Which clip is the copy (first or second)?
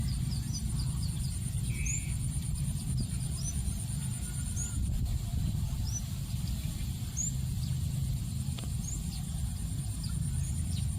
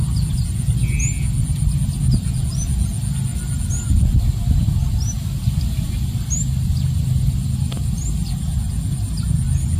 first